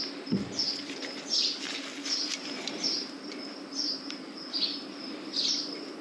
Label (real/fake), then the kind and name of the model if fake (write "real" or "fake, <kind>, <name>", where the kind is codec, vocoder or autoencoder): real